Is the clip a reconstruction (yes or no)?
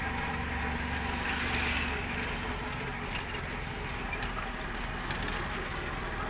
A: no